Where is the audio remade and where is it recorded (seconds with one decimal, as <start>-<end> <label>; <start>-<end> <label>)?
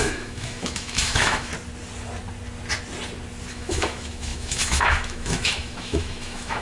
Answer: 0.0-1.5 remade; 1.5-3.5 recorded; 3.5-6.6 remade